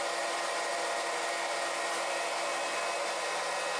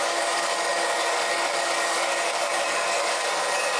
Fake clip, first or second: second